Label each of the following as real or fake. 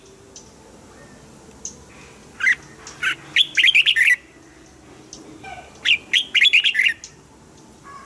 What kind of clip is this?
real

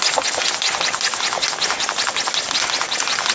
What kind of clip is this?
real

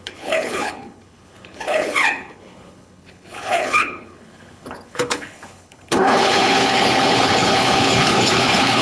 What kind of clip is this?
fake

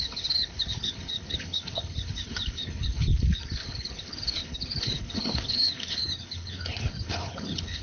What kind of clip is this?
fake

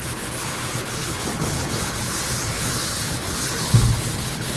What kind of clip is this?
fake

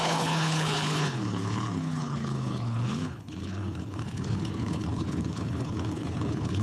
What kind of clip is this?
fake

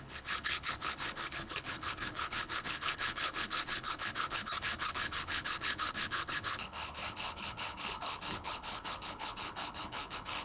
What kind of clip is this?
fake